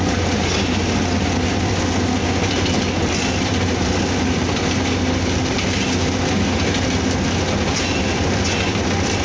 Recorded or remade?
recorded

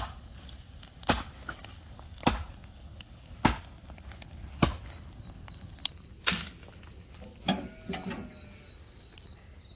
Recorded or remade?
recorded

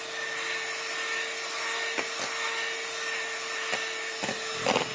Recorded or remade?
recorded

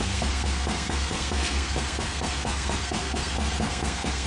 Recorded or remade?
remade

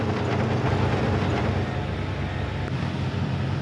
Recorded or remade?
recorded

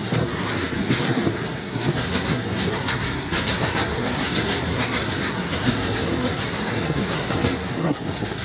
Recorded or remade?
remade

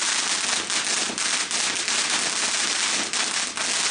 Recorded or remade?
recorded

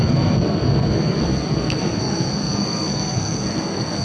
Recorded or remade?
remade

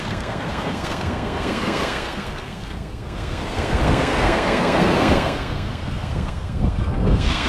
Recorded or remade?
remade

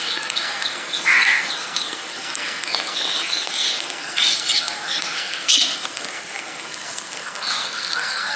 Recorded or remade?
remade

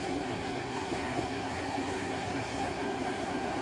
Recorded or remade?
remade